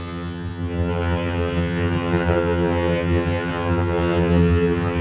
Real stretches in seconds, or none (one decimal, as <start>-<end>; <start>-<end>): none